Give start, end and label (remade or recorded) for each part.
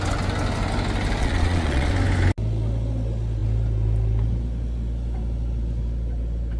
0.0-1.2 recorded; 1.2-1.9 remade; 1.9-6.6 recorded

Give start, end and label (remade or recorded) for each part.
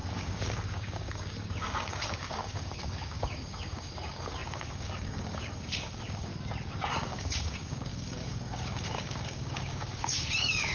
0.0-6.3 remade; 6.3-6.9 recorded; 6.9-10.7 remade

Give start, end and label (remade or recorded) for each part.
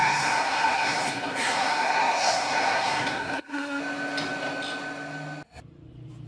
0.0-3.8 remade; 3.8-6.3 recorded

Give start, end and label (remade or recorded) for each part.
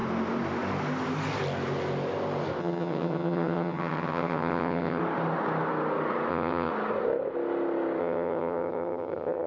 0.0-2.6 recorded; 2.6-5.0 remade; 5.0-6.3 recorded; 6.3-6.7 remade; 6.7-8.0 recorded; 8.0-9.5 remade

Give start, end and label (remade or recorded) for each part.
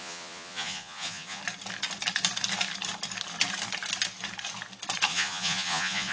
0.0-1.4 remade; 1.4-5.1 recorded; 5.1-6.1 remade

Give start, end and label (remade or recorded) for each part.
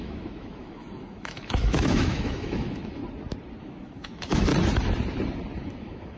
0.0-3.0 remade; 3.0-3.6 recorded; 3.6-4.5 remade; 4.5-5.6 recorded; 5.6-6.2 remade